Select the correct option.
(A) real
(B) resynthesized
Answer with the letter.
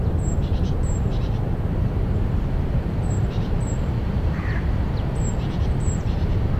B